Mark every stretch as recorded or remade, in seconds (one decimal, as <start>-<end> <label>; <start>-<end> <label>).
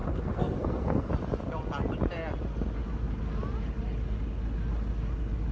0.0-1.1 remade; 1.1-5.5 recorded